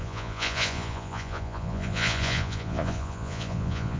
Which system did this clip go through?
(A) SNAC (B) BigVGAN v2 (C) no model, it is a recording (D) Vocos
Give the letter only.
D